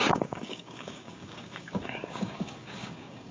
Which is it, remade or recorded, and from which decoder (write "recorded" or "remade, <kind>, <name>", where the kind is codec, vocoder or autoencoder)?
remade, codec, DAC